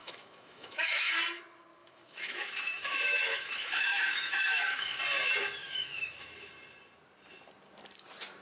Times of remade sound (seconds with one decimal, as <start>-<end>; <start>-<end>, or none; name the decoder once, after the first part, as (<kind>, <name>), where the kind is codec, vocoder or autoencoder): 0.0-1.1 (autoencoder, DAC-VAE); 1.8-5.0; 5.6-6.5